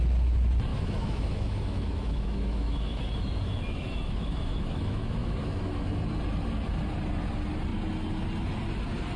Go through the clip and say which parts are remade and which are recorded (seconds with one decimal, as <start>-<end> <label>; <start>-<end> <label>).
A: 0.0-0.7 recorded; 0.7-5.9 remade; 5.9-9.2 recorded

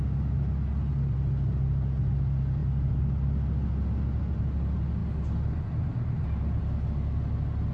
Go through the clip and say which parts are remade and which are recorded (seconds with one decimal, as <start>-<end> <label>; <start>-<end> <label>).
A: 0.0-7.7 recorded

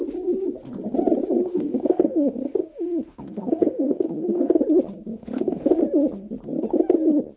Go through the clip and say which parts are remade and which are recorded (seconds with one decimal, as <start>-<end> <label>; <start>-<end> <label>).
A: 0.0-1.5 recorded; 1.5-4.6 remade; 4.6-5.1 recorded; 5.1-5.8 remade; 5.8-7.4 recorded

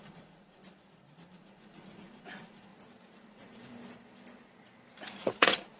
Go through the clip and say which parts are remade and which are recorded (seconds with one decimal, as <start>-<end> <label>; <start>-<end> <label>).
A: 0.0-0.6 remade; 0.6-1.3 recorded; 1.3-2.7 remade; 2.7-3.3 recorded; 3.3-3.7 remade; 3.7-5.2 recorded; 5.2-5.8 remade